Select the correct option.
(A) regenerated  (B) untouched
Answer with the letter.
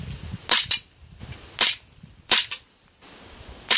B